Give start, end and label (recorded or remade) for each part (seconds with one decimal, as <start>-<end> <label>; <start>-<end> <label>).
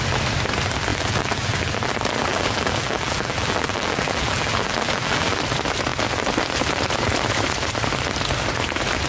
0.0-0.9 recorded; 0.9-1.7 remade; 1.7-2.3 recorded; 2.3-5.4 remade; 5.4-9.1 recorded